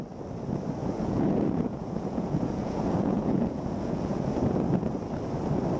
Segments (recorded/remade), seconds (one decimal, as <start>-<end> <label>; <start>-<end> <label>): 0.0-0.8 recorded; 0.8-4.3 remade; 4.3-5.8 recorded